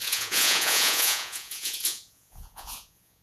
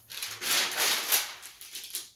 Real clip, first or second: second